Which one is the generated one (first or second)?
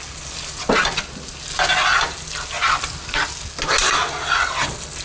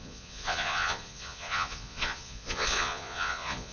second